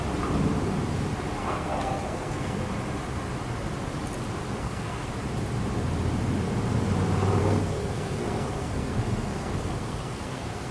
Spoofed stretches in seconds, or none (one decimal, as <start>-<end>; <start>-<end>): 1.4-2.6; 4.6-5.1; 7.4-10.7

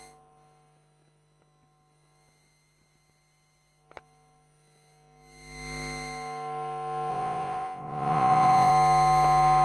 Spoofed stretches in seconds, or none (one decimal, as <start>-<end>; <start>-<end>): 7.1-8.7

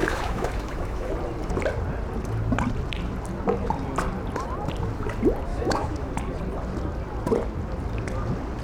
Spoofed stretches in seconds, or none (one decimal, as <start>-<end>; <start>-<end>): 0.0-1.1; 5.5-6.1

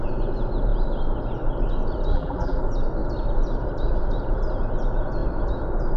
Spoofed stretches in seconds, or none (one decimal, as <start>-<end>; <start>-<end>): 2.1-2.6

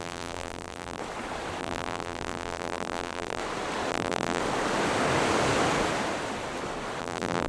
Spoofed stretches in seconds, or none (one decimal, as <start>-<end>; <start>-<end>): 0.0-1.0; 1.6-3.4; 3.9-4.4; 7.0-7.5